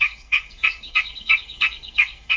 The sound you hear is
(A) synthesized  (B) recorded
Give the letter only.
A